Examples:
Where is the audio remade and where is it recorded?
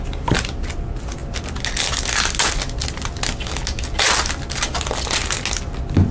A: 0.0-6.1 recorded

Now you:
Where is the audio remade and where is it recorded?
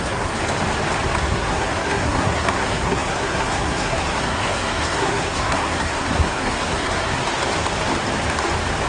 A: 0.0-0.4 remade; 0.4-1.2 recorded; 1.2-7.1 remade; 7.1-8.9 recorded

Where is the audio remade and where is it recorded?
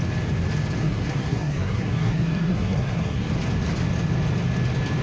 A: 0.0-0.8 recorded; 0.8-3.3 remade; 3.3-5.0 recorded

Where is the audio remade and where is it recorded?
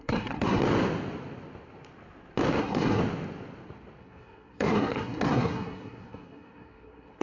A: 0.0-0.6 remade; 0.6-2.6 recorded; 2.6-3.0 remade; 3.0-4.0 recorded; 4.0-7.2 remade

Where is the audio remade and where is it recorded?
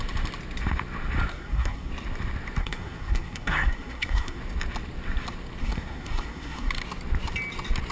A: 0.0-1.3 recorded; 1.3-1.9 remade; 1.9-2.6 recorded; 2.6-4.4 remade; 4.4-5.6 recorded; 5.6-6.7 remade; 6.7-7.9 recorded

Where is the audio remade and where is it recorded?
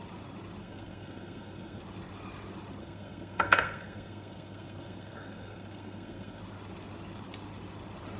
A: 0.0-0.6 recorded; 0.6-1.8 remade; 1.8-2.8 recorded; 2.8-6.4 remade; 6.4-8.2 recorded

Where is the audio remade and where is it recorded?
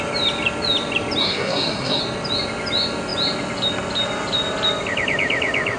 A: 0.0-1.2 recorded; 1.2-2.0 remade; 2.0-5.8 recorded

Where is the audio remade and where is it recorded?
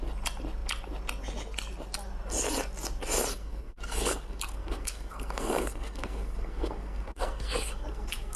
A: 0.0-3.3 recorded; 3.3-8.4 remade